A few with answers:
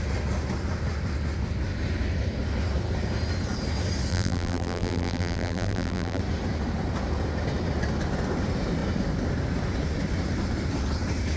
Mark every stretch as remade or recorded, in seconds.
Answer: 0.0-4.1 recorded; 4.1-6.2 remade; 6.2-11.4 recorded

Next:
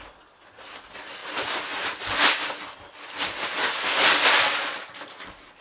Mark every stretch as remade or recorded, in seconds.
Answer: 0.0-5.6 recorded

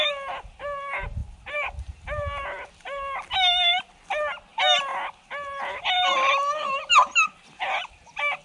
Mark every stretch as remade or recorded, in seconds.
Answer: 0.0-8.4 recorded

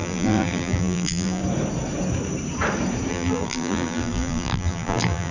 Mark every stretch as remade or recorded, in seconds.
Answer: 0.0-1.4 remade; 1.4-3.1 recorded; 3.1-5.3 remade